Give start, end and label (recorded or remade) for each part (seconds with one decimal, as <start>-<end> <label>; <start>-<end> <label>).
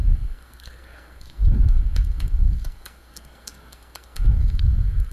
0.0-5.1 remade